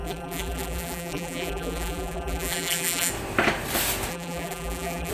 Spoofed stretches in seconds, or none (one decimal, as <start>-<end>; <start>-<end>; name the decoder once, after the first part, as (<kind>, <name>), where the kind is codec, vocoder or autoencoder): 0.0-3.1 (vocoder, BigVGAN v2); 4.1-5.1